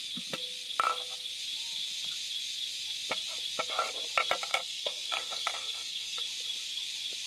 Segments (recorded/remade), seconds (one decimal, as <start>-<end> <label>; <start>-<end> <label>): 0.0-4.5 recorded; 4.5-6.2 remade; 6.2-7.3 recorded